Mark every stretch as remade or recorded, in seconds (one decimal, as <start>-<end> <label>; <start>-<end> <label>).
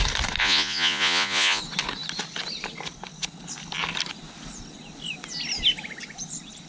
0.0-0.4 recorded; 0.4-1.6 remade; 1.6-6.7 recorded